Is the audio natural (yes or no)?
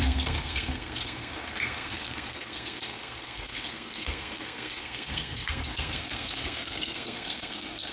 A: no